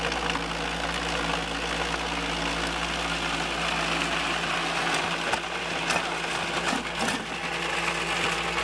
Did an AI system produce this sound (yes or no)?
no